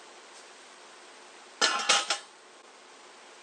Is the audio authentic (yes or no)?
yes